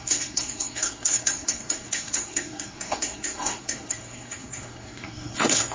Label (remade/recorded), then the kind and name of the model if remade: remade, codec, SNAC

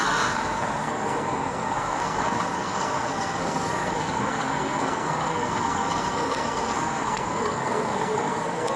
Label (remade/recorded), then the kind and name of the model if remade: remade, codec, SNAC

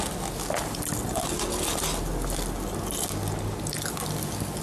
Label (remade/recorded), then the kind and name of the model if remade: recorded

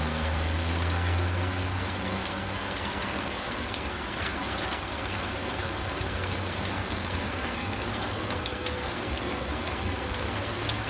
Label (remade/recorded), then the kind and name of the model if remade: remade, codec, SNAC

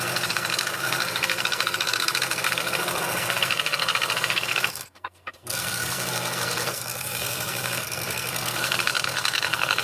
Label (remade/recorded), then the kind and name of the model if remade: remade, codec, SNAC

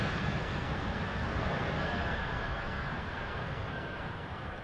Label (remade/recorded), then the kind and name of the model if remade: remade, codec, SNAC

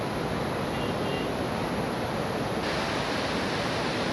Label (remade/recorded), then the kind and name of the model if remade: recorded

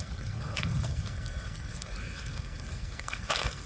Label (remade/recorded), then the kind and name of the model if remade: remade, codec, SNAC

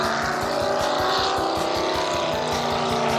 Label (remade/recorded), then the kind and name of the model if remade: recorded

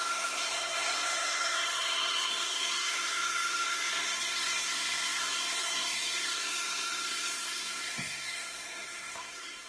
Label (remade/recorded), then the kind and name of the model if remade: remade, codec, SNAC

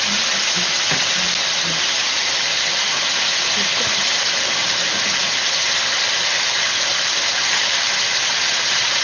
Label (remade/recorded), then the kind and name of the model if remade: recorded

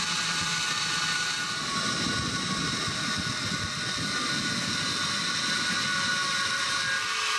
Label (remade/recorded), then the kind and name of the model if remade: recorded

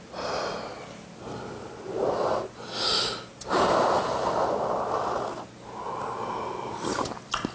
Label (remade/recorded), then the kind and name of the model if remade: recorded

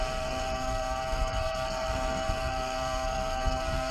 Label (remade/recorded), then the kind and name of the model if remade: remade, codec, SNAC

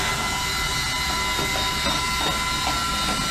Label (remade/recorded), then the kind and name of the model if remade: recorded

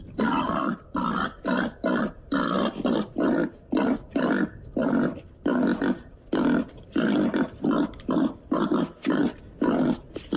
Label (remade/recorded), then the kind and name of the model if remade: recorded